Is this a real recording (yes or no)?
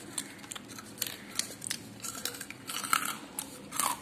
yes